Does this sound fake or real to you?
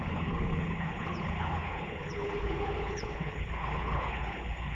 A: fake